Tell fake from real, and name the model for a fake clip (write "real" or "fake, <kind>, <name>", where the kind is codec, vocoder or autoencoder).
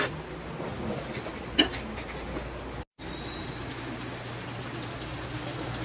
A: real